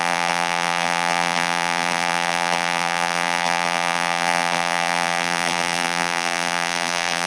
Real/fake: fake